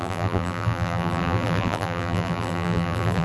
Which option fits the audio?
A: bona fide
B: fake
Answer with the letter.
B